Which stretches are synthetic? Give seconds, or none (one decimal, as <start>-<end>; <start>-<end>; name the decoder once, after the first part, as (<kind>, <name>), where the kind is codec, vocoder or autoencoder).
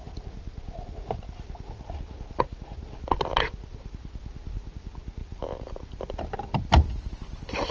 none